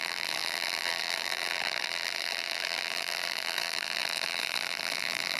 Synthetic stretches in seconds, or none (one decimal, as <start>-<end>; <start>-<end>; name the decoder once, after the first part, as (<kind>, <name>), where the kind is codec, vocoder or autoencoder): 0.0-5.4 (vocoder, BigVGAN v2)